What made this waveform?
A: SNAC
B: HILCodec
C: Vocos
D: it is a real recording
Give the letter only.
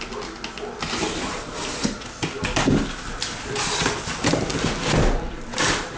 D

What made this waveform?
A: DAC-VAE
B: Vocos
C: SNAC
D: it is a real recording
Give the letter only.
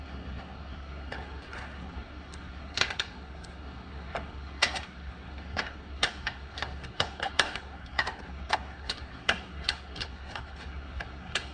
C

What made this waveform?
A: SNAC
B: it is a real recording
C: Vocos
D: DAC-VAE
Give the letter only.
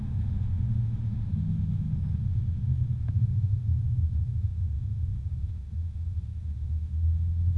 D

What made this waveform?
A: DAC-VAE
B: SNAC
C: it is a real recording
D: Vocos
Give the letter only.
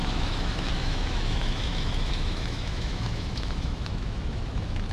A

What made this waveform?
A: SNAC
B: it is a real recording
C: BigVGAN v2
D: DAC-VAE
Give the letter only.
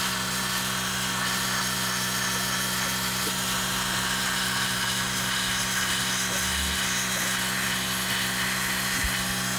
B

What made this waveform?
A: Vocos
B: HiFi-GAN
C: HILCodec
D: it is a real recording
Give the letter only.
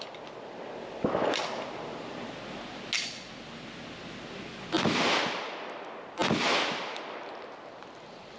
D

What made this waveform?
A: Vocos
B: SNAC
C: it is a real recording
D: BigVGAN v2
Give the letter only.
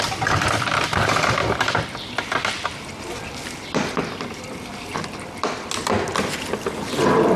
D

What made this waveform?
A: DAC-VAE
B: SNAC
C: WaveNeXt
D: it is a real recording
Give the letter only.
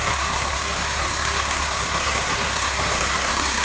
B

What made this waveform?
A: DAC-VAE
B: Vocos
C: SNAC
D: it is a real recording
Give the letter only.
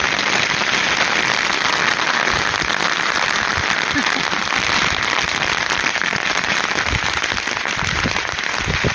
D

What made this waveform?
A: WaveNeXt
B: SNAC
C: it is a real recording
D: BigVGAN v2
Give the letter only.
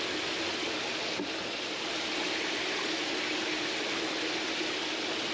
C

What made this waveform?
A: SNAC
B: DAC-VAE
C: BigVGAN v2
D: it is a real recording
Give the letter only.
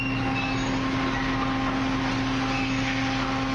D